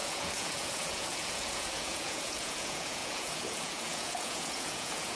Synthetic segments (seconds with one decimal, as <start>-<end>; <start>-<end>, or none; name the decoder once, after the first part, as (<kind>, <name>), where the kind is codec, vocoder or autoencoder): 0.0-5.2 (vocoder, Vocos)